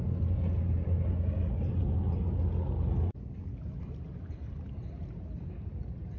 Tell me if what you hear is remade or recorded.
recorded